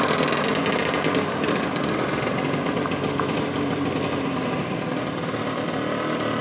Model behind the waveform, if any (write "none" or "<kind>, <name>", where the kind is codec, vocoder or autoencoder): none